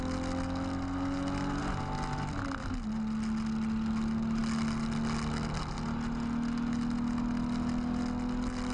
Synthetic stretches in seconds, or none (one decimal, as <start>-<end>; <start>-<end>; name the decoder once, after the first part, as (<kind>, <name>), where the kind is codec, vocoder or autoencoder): none